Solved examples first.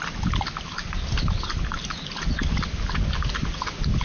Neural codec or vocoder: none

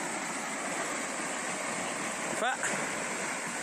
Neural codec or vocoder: none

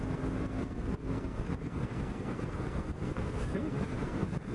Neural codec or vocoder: codec, SNAC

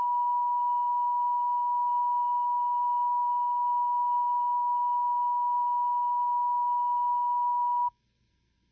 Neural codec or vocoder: codec, SNAC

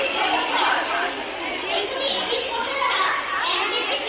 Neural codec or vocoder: none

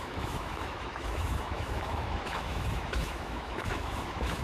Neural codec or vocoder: autoencoder, DAC-VAE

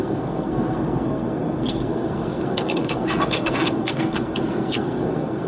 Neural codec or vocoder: codec, SNAC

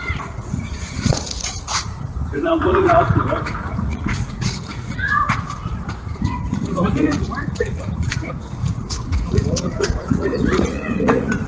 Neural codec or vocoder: vocoder, Vocos